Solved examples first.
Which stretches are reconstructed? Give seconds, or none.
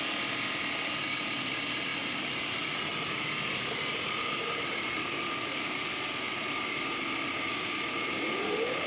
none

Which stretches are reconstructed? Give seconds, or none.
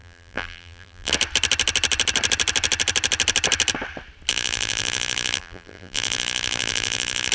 0.0-1.1 (vocoder, BigVGAN v2); 4.3-7.3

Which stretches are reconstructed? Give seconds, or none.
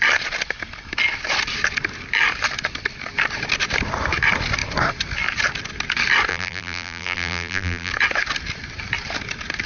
6.3-7.9 (vocoder, BigVGAN v2)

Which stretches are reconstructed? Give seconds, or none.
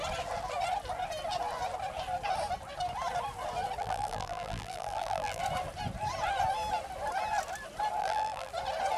3.8-5.4 (vocoder, BigVGAN v2); 8.0-8.5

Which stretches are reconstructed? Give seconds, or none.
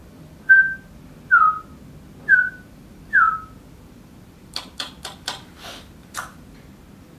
0.0-0.6 (vocoder, BigVGAN v2); 2.3-6.5